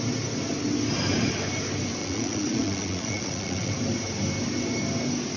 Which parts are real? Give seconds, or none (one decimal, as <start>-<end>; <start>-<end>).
0.0-2.0; 3.7-5.4